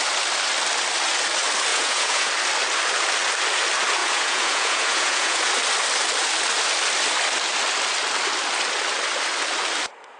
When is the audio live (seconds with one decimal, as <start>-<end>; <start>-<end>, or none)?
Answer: 0.0-1.7; 2.3-4.0; 5.5-10.2